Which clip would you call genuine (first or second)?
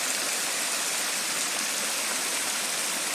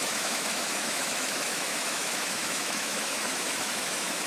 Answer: first